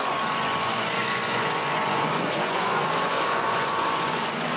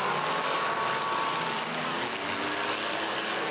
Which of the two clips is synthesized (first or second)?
first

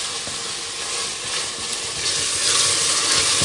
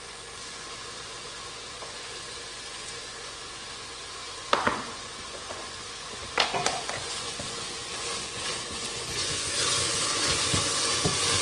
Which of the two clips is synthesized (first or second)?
second